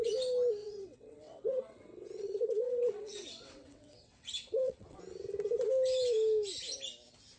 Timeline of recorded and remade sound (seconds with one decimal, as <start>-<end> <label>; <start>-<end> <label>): 0.0-0.6 recorded; 0.6-5.0 remade; 5.0-7.4 recorded